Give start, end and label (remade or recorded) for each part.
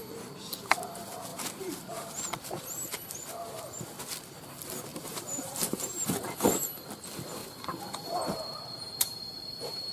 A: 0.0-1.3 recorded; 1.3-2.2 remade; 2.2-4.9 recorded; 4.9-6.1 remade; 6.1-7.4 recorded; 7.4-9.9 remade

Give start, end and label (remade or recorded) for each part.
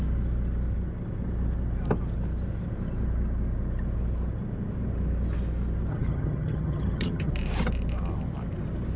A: 0.0-5.9 recorded; 5.9-7.3 remade; 7.3-9.0 recorded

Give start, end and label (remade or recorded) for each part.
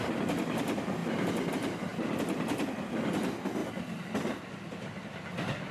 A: 0.0-5.7 recorded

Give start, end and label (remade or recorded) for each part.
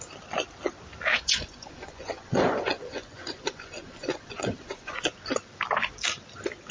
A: 0.0-1.1 recorded; 1.1-5.1 remade; 5.1-6.7 recorded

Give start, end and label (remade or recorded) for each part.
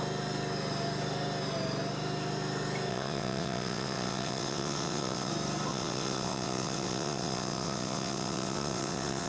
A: 0.0-2.9 recorded; 2.9-5.3 remade; 5.3-5.7 recorded; 5.7-9.3 remade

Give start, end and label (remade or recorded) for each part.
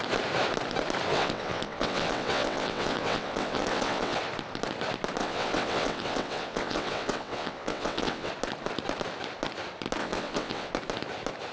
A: 0.0-1.1 recorded; 1.1-4.2 remade; 4.2-5.2 recorded; 5.2-8.3 remade; 8.3-10.0 recorded; 10.0-10.7 remade; 10.7-11.5 recorded